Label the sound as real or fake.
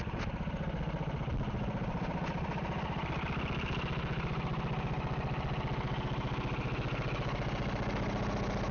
real